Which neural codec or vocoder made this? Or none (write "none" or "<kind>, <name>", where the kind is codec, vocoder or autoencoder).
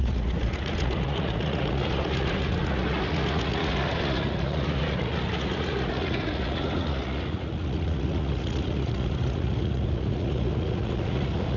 vocoder, Vocos